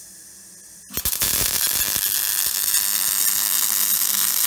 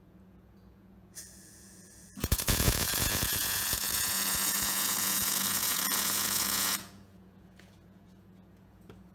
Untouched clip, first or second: first